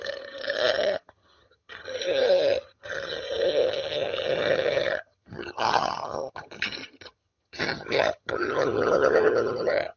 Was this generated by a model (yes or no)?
yes